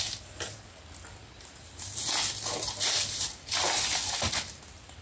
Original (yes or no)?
yes